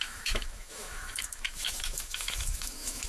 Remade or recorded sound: remade